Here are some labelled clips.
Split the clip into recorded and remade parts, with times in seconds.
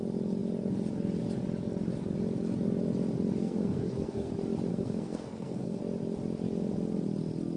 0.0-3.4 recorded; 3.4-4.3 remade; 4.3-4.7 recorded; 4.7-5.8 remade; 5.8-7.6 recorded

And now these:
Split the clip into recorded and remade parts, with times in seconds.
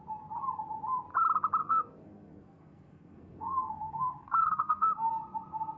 0.0-1.6 recorded; 1.6-5.1 remade; 5.1-5.8 recorded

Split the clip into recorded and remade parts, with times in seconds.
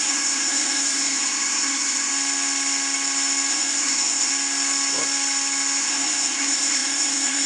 0.0-2.1 remade; 2.1-3.5 recorded; 3.5-4.3 remade; 4.3-5.8 recorded; 5.8-7.5 remade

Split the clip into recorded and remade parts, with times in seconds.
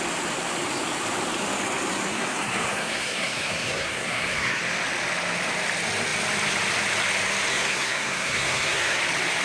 0.0-2.1 recorded; 2.1-4.6 remade; 4.6-7.5 recorded; 7.5-9.0 remade; 9.0-9.4 recorded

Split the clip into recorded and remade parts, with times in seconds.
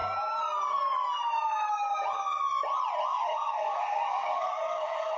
0.0-3.1 recorded; 3.1-5.2 remade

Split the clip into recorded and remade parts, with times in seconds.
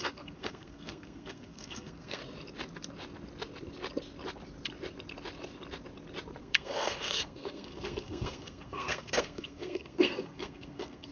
0.0-2.2 remade; 2.2-6.4 recorded; 6.4-11.1 remade